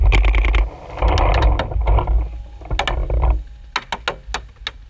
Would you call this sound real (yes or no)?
yes